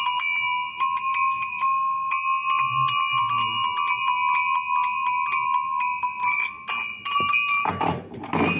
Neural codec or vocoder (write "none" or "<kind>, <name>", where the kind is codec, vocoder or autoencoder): none